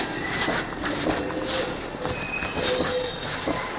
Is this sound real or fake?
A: real